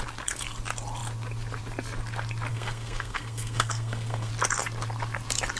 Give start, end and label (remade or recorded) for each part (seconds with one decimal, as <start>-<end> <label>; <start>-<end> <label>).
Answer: 0.0-2.5 recorded; 2.5-4.3 remade; 4.3-5.6 recorded

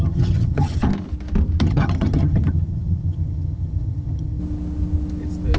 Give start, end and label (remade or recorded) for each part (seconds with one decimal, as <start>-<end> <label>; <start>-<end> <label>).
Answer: 0.0-0.9 remade; 0.9-1.6 recorded; 1.6-4.4 remade; 4.4-5.6 recorded

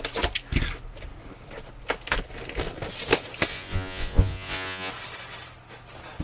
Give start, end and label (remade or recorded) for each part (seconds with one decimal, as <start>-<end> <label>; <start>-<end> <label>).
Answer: 0.0-3.5 recorded; 3.5-4.9 remade; 4.9-6.2 recorded

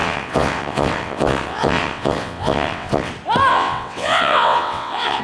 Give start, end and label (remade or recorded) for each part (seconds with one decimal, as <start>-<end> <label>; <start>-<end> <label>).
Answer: 0.0-3.1 remade; 3.1-3.5 recorded; 3.5-5.2 remade

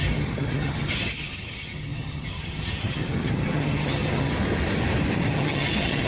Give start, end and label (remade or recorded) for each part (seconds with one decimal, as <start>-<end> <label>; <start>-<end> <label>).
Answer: 0.0-4.3 remade; 4.3-5.3 recorded; 5.3-6.1 remade